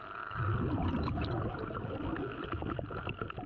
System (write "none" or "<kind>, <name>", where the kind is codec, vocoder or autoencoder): none